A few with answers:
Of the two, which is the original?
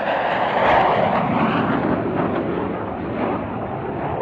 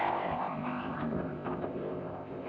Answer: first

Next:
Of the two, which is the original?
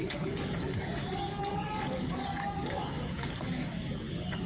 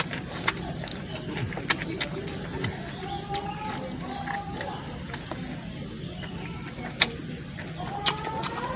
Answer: second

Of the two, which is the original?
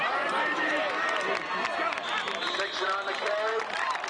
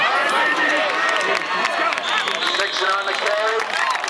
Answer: first